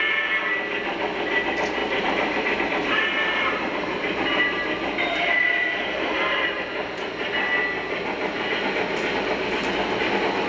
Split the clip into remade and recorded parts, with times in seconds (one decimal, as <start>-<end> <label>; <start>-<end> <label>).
0.0-1.8 recorded; 1.8-6.6 remade; 6.6-10.5 recorded